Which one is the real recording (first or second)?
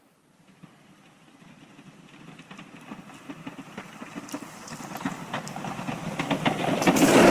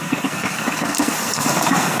first